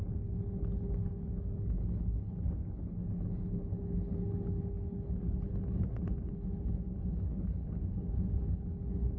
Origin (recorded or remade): remade